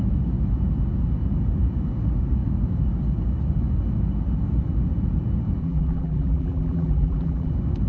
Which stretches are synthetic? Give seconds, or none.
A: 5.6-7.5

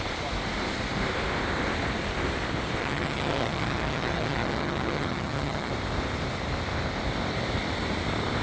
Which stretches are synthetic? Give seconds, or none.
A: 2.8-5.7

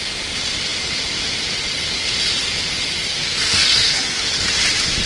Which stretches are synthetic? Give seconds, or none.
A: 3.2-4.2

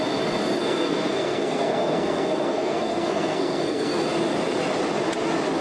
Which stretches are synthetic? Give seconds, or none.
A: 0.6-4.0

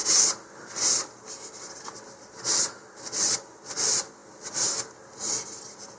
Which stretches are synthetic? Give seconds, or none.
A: none

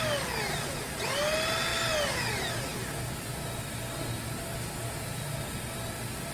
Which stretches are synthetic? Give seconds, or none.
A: none